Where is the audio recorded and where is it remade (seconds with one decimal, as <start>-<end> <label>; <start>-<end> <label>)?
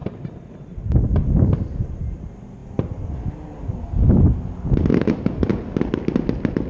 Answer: 0.0-4.9 recorded; 4.9-5.5 remade; 5.5-6.7 recorded